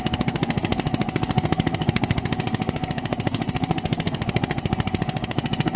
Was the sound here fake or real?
fake